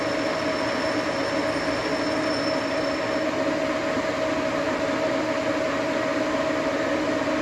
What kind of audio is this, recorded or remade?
recorded